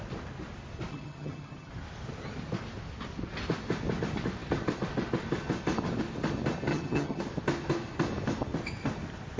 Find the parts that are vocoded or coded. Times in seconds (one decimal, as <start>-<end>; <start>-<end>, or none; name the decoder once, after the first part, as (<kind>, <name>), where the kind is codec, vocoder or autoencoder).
0.9-1.7 (vocoder, HiFi-GAN); 6.7-7.2

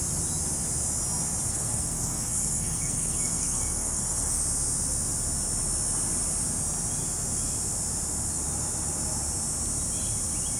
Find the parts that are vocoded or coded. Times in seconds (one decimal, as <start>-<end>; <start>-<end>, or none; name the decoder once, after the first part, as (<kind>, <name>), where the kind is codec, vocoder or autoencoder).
1.5-4.4 (codec, SNAC)

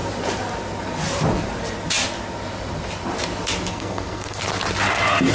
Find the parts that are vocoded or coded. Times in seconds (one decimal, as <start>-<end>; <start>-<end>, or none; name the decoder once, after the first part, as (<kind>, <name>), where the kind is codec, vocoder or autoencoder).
3.7-4.4 (codec, SNAC)

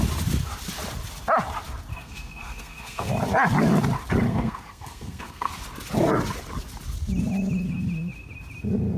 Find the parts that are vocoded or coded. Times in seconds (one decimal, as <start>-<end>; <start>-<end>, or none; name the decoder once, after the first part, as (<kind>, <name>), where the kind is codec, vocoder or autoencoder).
1.9-3.1 (codec, SNAC); 4.3-5.5

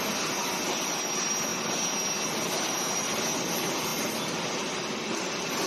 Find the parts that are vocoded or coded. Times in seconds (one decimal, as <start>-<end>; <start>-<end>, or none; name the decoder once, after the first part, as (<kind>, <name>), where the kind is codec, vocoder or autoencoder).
none

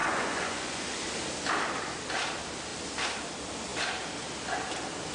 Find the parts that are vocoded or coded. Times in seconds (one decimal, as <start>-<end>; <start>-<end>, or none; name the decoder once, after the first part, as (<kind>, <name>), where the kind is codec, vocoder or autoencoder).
0.0-0.8 (vocoder, Vocos)

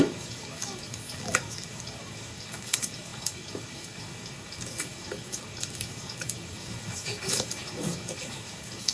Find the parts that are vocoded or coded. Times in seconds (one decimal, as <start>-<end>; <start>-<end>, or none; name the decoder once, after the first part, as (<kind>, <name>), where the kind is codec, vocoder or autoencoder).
0.0-8.9 (codec, DAC)